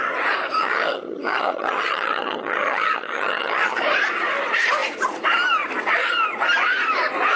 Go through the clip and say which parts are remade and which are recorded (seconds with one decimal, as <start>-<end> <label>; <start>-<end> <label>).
0.0-0.6 recorded; 0.6-3.8 remade; 3.8-7.4 recorded